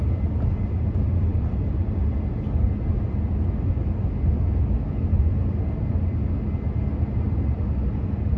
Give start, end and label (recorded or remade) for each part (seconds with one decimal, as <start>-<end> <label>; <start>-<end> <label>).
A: 0.0-8.4 recorded